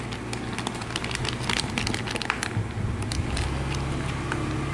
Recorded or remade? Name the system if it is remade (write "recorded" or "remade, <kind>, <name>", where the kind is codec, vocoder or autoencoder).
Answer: recorded